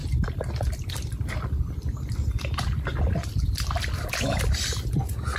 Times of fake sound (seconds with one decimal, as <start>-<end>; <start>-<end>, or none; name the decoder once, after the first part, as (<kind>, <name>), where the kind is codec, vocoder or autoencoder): none